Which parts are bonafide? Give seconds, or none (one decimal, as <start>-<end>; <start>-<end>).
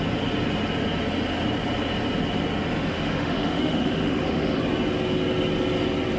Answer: 0.0-2.9; 4.6-6.2